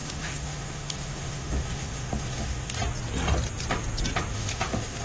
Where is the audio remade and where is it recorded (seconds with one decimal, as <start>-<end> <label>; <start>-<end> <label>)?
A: 0.0-2.8 remade; 2.8-4.3 recorded; 4.3-5.0 remade

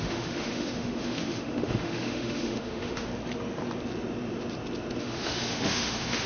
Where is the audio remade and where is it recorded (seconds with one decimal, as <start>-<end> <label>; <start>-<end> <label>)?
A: 0.0-3.1 remade; 3.1-5.0 recorded; 5.0-6.3 remade

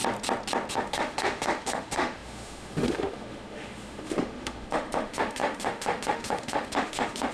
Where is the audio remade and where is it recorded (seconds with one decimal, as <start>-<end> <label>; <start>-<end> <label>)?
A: 0.0-0.7 recorded; 0.7-7.3 remade

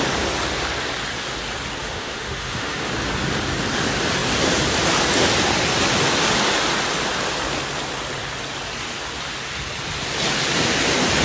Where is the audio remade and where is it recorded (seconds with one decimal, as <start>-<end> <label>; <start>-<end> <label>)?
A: 0.0-1.8 recorded; 1.8-2.8 remade; 2.8-11.2 recorded

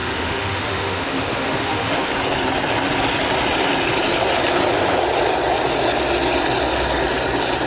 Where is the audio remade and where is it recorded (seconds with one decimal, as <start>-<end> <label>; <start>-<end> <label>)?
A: 0.0-2.1 remade; 2.1-7.7 recorded

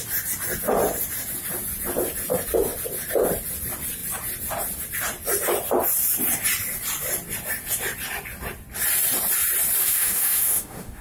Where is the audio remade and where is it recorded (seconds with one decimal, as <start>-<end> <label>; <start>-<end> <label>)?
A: 0.0-9.8 recorded; 9.8-11.0 remade

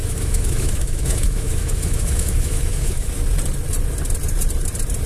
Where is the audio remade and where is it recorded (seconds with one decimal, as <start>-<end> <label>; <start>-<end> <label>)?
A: 0.0-3.1 remade; 3.1-5.1 recorded